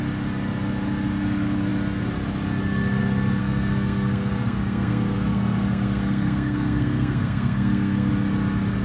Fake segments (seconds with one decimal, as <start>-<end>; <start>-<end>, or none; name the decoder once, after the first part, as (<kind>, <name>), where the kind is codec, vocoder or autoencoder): 3.4-8.1 (codec, SNAC)